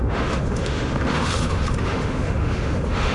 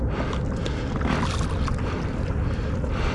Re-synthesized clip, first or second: first